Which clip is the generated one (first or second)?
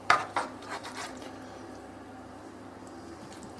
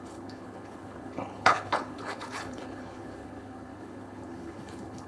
second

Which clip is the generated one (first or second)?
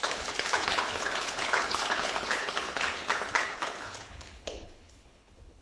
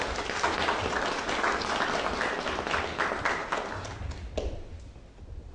first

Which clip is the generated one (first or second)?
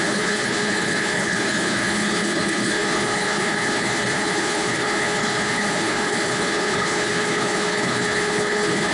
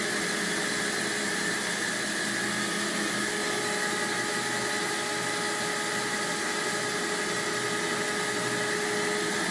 first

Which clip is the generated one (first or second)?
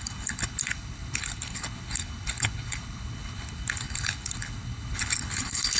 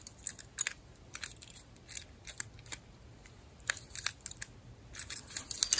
first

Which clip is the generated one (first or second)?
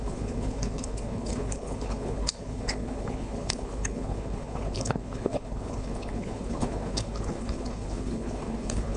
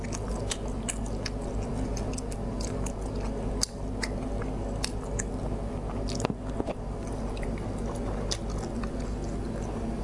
first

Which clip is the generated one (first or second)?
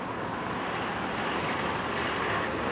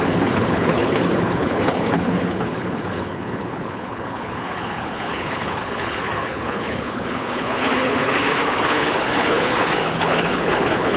second